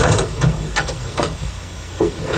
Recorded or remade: remade